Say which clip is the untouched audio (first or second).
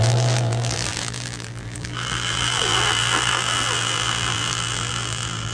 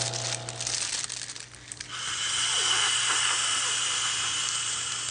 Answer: second